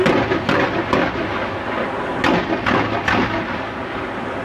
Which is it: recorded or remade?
recorded